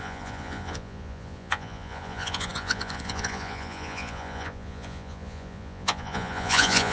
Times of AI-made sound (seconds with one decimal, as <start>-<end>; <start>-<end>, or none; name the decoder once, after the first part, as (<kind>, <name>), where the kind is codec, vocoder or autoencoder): 0.0-6.9 (vocoder, Vocos)